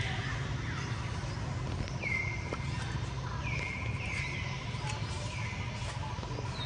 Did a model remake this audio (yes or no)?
no